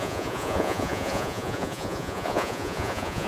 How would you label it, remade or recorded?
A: remade